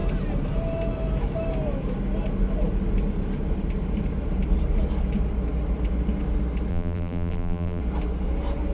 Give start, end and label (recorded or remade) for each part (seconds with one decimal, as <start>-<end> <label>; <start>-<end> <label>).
0.0-6.7 recorded; 6.7-7.8 remade; 7.8-8.7 recorded